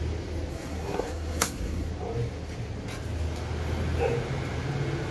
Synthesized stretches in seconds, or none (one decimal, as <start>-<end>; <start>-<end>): 0.5-1.9